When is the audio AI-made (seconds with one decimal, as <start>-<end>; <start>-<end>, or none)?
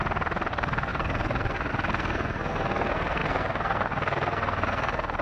0.5-5.2